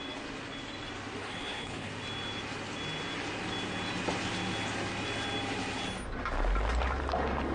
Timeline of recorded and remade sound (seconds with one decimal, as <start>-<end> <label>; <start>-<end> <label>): 0.0-1.2 recorded; 1.2-1.9 remade; 1.9-7.5 recorded